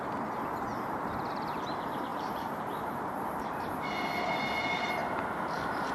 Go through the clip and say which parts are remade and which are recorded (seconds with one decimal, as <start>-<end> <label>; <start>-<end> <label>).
0.0-0.7 recorded; 0.7-1.3 remade; 1.3-2.1 recorded; 2.1-3.9 remade; 3.9-5.0 recorded; 5.0-5.9 remade

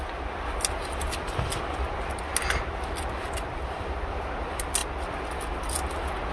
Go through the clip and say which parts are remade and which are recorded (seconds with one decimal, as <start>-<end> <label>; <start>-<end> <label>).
0.0-6.3 recorded